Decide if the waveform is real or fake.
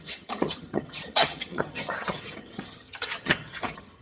fake